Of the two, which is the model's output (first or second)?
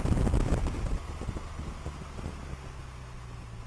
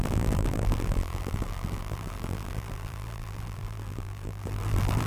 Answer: second